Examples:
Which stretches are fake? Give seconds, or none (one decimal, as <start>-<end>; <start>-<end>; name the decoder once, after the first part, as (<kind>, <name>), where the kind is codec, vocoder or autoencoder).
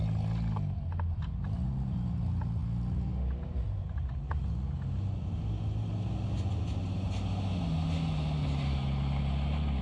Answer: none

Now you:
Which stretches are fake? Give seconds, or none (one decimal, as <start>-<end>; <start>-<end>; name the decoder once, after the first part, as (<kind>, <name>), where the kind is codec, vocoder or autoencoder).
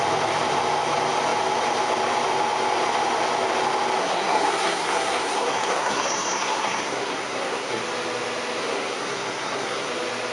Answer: 4.0-7.8 (codec, SNAC); 8.6-9.9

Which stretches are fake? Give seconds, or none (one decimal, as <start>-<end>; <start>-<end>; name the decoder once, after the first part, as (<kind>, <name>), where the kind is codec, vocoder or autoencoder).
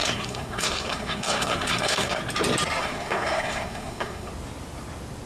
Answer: 0.0-2.2 (codec, SNAC); 2.8-4.3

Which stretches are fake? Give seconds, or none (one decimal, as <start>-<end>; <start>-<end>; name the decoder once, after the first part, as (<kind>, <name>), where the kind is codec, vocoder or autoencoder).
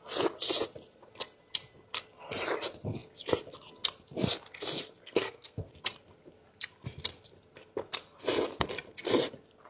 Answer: 5.0-5.7 (codec, SNAC)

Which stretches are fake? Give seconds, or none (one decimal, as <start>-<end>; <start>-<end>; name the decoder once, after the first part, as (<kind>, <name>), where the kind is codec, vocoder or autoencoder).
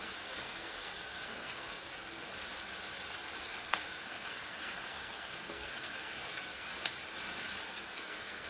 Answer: 0.0-2.3 (codec, SNAC); 3.4-6.7; 7.6-8.5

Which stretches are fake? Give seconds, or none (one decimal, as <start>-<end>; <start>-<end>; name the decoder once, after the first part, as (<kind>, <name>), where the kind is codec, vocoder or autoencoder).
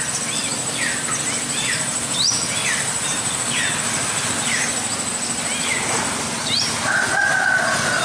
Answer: none